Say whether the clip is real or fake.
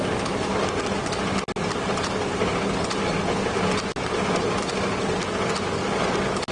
real